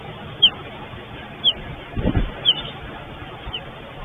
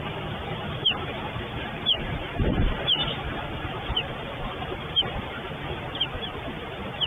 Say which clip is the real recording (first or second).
first